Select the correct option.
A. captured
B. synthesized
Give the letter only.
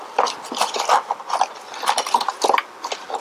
A